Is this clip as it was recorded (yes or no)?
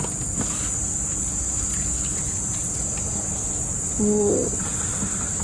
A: yes